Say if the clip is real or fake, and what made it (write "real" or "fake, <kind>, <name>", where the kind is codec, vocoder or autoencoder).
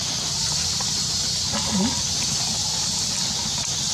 real